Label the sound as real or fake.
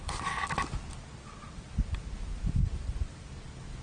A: real